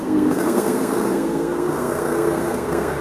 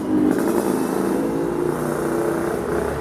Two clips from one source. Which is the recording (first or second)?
second